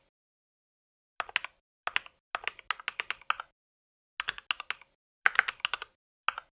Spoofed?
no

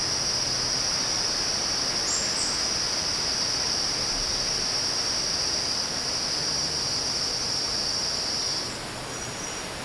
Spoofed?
no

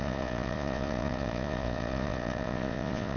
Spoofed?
yes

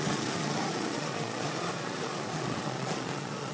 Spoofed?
yes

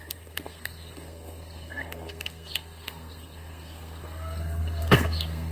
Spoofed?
yes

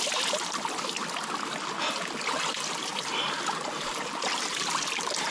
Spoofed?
no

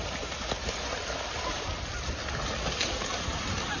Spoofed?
no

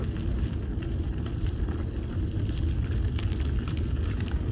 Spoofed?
no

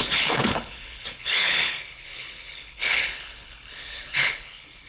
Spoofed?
yes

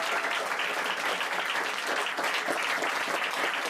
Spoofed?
no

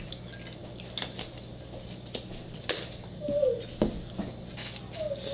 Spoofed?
no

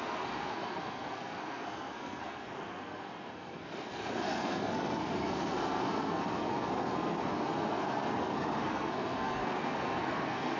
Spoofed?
yes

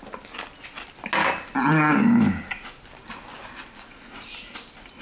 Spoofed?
no